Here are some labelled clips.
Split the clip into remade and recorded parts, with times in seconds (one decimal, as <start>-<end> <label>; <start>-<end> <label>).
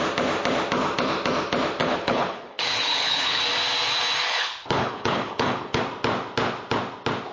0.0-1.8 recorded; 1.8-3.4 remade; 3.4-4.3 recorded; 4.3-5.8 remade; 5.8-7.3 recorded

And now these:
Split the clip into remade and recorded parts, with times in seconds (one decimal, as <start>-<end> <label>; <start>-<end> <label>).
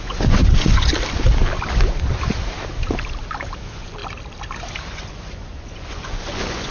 0.0-0.9 remade; 0.9-3.6 recorded; 3.6-4.0 remade; 4.0-4.9 recorded; 4.9-6.7 remade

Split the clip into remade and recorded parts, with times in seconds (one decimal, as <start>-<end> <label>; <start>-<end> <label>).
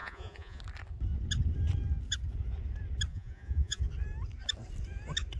0.0-0.6 remade; 0.6-3.1 recorded; 3.1-3.8 remade; 3.8-5.4 recorded